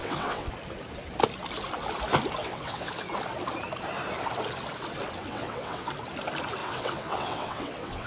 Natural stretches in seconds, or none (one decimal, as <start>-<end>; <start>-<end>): 0.5-2.4; 2.9-5.2; 5.9-6.6